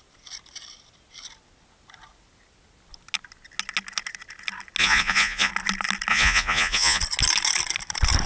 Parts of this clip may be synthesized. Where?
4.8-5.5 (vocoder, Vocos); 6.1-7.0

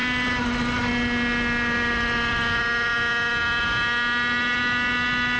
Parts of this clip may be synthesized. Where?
none

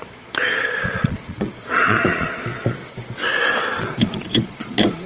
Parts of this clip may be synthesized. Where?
0.0-2.8 (vocoder, Vocos); 3.8-5.1

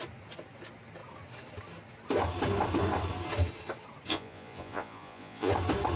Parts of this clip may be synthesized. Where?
4.1-5.5 (vocoder, Vocos)

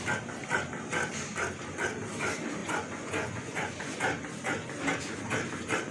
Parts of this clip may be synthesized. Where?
2.6-4.0 (vocoder, Vocos)

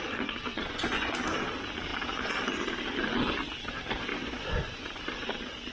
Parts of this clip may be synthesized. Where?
0.5-1.1 (vocoder, Vocos); 4.1-5.0

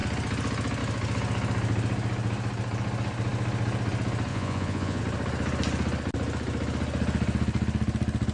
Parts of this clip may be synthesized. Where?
4.3-5.0 (vocoder, Vocos)